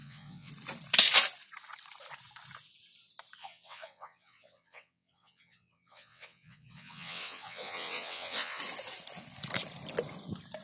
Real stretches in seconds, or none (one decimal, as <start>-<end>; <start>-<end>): 0.5-3.4; 8.6-10.6